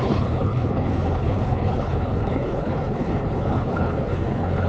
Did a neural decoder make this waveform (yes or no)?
yes